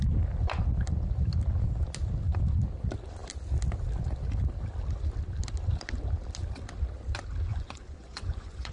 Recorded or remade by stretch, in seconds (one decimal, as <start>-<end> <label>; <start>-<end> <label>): 0.0-7.5 recorded; 7.5-8.7 remade